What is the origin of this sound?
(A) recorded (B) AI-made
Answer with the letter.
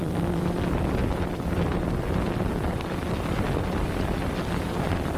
B